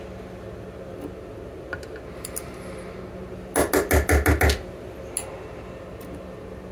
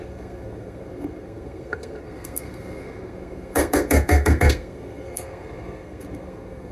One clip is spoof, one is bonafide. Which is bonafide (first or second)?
first